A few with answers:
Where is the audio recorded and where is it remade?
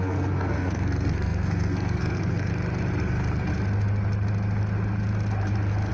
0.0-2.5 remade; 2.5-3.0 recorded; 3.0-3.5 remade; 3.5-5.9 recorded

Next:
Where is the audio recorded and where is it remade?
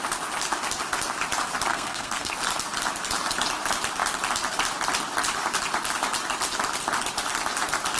0.0-1.7 recorded; 1.7-2.3 remade; 2.3-8.0 recorded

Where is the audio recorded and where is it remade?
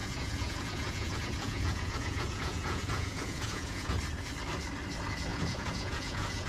0.0-3.9 remade; 3.9-5.3 recorded; 5.3-6.5 remade